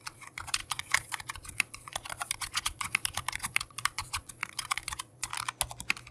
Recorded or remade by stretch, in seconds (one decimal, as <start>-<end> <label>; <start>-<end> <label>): 0.0-5.3 remade; 5.3-6.1 recorded